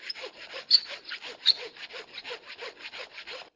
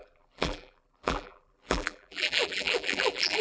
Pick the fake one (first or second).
second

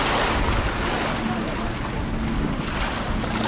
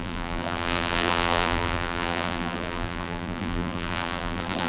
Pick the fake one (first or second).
second